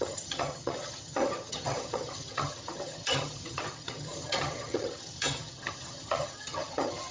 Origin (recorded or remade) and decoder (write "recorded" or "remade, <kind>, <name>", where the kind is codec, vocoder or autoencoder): remade, vocoder, HiFi-GAN